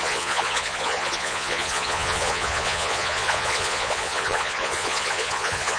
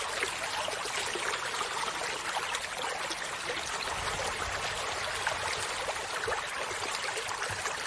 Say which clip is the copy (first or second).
first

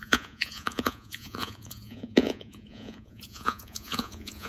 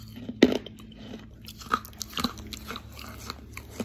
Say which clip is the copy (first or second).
first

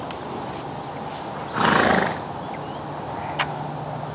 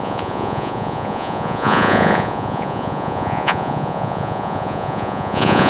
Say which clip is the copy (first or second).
second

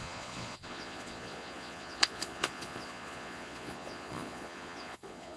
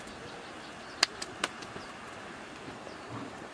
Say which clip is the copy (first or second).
first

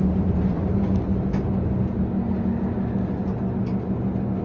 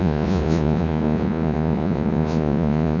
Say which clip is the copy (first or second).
second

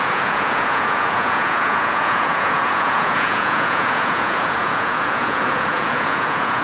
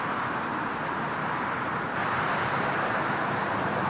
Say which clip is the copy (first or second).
first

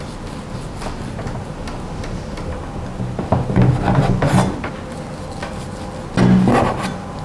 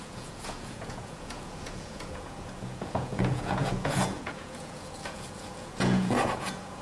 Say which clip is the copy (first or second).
second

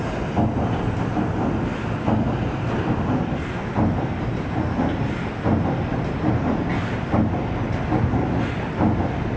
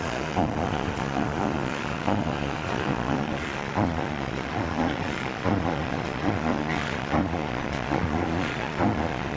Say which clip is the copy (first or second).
second